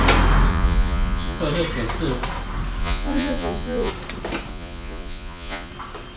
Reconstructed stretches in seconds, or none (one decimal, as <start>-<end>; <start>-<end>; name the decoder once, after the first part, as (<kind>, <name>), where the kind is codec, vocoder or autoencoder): 0.5-1.4 (vocoder, Vocos); 2.8-3.9; 4.5-5.7